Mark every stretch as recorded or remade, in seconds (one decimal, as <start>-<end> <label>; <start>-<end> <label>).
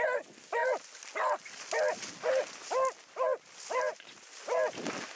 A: 0.0-5.2 recorded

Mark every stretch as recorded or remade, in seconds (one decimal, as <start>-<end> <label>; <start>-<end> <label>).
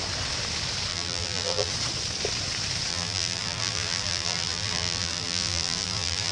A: 0.0-0.9 recorded; 0.9-1.7 remade; 1.7-2.9 recorded; 2.9-6.3 remade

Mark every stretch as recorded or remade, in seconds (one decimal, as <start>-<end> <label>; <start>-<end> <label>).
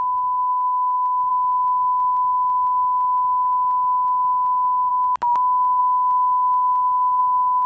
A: 0.0-7.7 recorded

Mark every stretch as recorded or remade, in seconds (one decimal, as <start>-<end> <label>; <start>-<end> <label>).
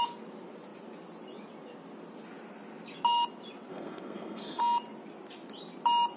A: 0.0-3.7 recorded; 3.7-4.6 remade; 4.6-6.2 recorded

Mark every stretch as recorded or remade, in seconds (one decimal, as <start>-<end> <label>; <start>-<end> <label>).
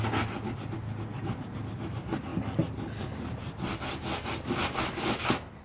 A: 0.0-1.1 recorded; 1.1-1.7 remade; 1.7-5.6 recorded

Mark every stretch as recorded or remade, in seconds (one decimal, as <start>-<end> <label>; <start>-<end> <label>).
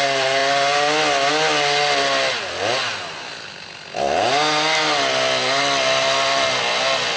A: 0.0-7.2 recorded